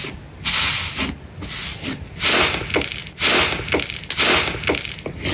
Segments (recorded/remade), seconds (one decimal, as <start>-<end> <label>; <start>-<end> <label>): 0.0-5.3 recorded